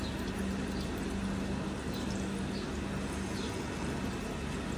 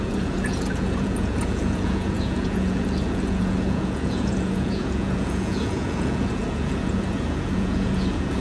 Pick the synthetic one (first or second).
second